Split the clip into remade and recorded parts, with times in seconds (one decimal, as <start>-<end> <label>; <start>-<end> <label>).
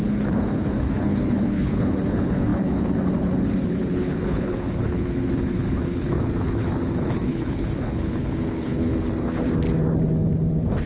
0.0-8.9 remade; 8.9-10.9 recorded